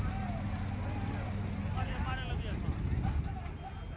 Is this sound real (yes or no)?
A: yes